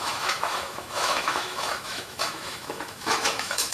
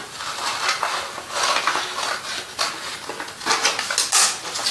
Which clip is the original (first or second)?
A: second